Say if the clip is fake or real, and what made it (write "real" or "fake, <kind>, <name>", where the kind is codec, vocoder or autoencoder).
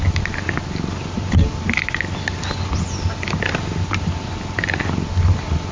real